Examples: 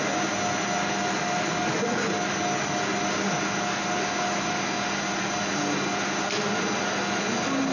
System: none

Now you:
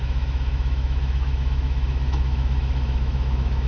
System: autoencoder, DAC-VAE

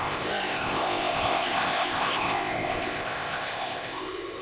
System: codec, ZipCodec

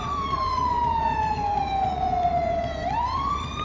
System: vocoder, Vocos